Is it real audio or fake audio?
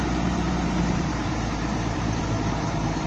fake